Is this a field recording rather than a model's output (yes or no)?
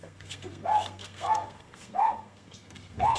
no